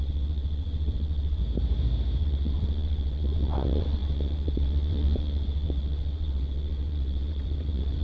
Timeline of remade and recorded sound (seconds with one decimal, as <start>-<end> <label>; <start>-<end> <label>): 0.0-1.4 remade; 1.4-2.2 recorded; 2.2-8.0 remade